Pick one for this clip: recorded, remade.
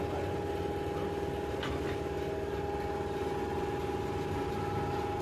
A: recorded